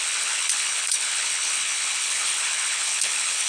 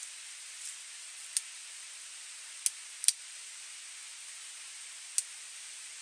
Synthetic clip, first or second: first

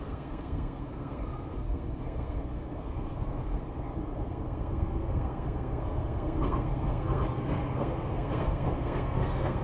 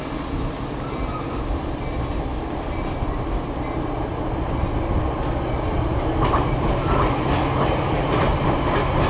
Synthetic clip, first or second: first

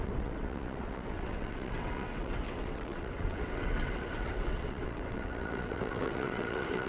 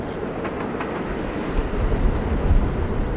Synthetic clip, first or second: first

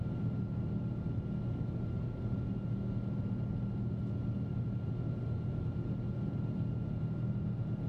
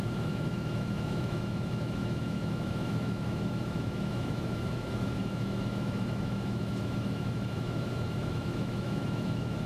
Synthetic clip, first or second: second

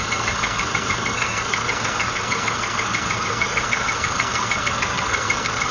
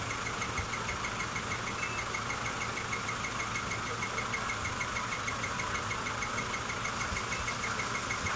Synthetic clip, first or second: first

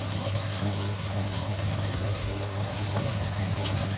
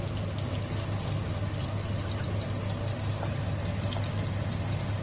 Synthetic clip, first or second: first